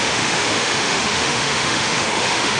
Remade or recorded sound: remade